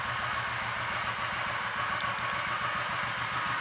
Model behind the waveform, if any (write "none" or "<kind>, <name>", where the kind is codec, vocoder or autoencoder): none